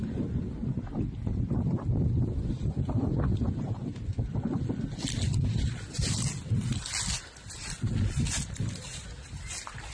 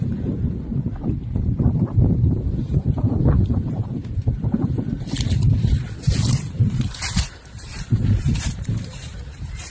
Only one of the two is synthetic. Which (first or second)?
second